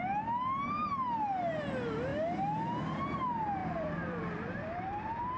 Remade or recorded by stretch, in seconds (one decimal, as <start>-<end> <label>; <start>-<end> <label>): 0.0-3.6 recorded; 3.6-5.4 remade